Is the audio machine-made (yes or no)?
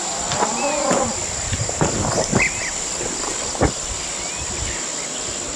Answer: no